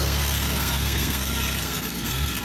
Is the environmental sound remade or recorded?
remade